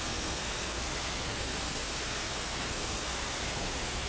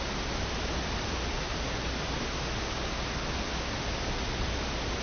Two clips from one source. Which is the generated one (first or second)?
first